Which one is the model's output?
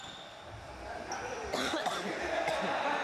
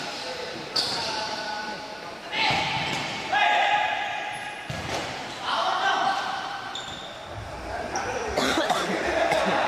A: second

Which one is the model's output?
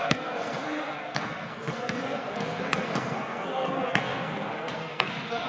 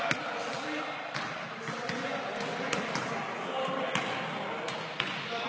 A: first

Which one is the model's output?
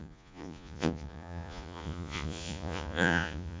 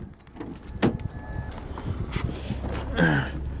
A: first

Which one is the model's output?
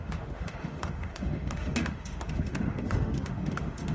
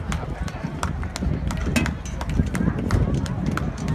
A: first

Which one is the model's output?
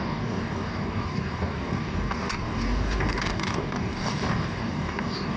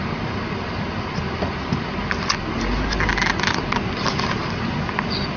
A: first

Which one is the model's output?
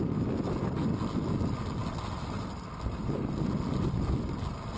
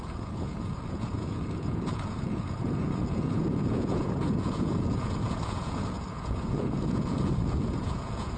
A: second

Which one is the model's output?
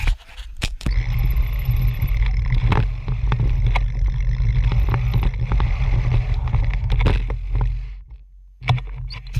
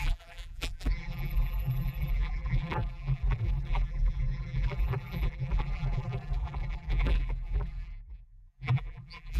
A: second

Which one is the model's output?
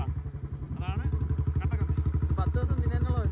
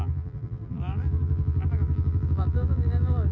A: second